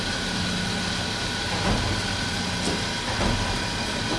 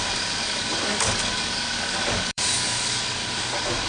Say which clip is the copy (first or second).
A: second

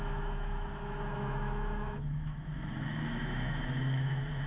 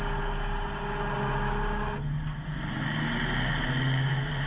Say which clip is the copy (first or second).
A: first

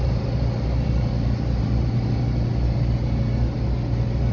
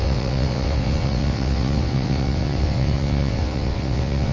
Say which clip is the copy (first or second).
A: second